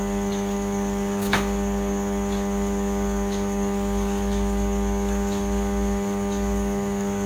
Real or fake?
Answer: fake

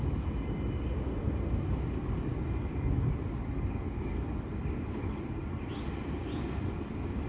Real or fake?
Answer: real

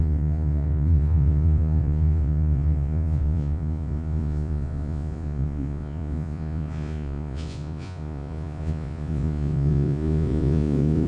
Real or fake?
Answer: fake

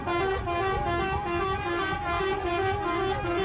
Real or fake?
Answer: real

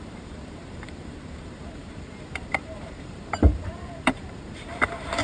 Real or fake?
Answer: fake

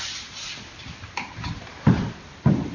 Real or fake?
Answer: fake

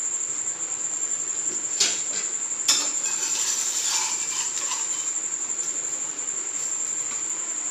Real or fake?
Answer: fake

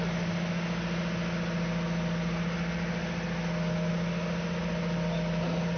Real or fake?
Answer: real